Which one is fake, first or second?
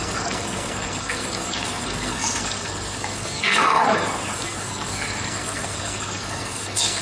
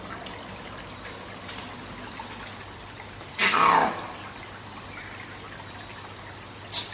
first